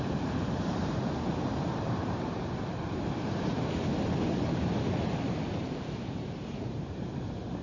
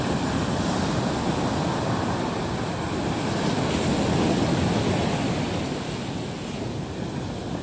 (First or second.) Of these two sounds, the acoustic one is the second